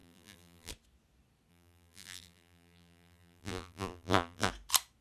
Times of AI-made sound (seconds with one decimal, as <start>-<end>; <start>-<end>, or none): 0.0-0.7; 1.5-4.5